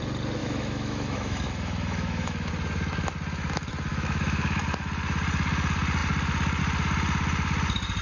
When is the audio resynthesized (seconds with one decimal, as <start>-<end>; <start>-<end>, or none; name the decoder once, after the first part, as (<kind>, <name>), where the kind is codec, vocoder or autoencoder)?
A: 0.4-2.5 (autoencoder, DAC-VAE); 3.9-4.6